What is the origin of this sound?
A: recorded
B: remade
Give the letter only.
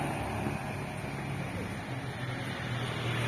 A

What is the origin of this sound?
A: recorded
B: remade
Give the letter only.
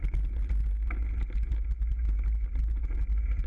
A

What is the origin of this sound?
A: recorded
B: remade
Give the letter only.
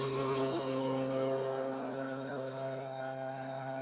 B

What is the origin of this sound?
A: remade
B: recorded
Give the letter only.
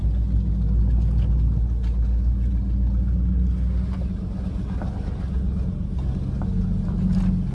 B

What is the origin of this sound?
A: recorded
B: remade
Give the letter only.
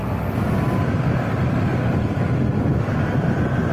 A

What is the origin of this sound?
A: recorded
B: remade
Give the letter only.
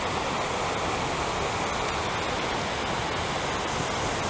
A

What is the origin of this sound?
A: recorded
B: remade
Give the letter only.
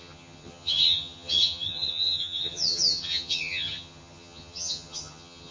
B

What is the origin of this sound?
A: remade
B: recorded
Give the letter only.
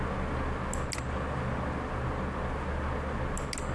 B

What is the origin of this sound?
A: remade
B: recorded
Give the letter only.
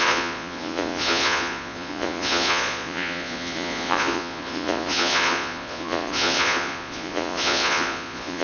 A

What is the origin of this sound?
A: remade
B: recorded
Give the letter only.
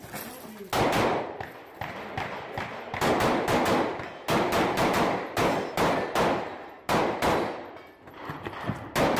B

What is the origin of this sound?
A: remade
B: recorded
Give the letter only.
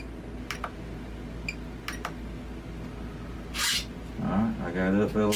B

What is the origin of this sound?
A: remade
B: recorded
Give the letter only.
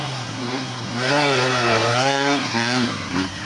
A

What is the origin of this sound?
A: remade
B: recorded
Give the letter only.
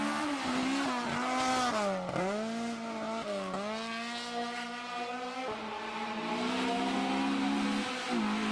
B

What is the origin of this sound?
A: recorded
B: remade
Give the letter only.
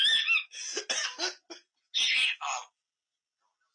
A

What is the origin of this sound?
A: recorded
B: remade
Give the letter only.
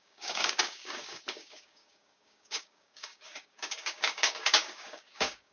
B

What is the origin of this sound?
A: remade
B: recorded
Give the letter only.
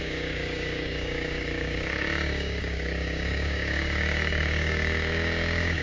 A